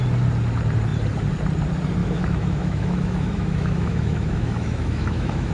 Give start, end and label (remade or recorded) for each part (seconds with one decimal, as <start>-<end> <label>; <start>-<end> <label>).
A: 0.0-2.0 recorded; 2.0-5.5 remade